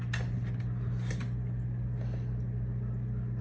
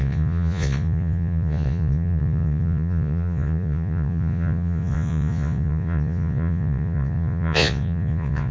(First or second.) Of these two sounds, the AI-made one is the second